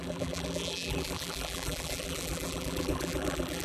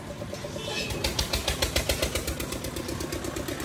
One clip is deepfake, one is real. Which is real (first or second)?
second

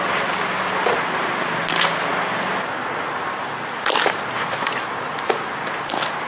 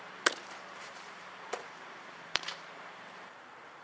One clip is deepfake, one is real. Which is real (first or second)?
first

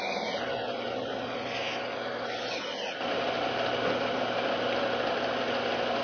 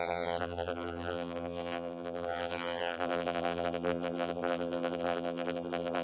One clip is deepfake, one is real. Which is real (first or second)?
first